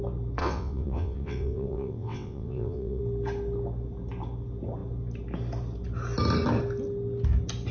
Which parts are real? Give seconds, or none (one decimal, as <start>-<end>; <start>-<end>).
0.0-0.4; 3.0-7.7